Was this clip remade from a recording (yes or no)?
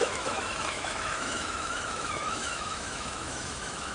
yes